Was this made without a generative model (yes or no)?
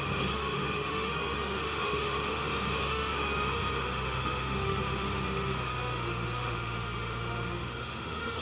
no